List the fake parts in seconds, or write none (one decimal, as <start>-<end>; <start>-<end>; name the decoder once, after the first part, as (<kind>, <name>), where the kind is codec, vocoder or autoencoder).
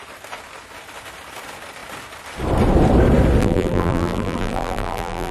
3.4-5.3 (vocoder, BigVGAN v2)